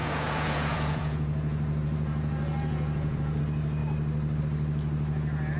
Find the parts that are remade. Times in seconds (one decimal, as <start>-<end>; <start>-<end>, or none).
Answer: 0.0-3.4